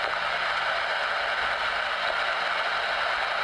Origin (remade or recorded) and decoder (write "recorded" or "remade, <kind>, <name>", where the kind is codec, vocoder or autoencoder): recorded